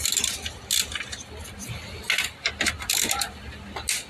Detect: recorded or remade recorded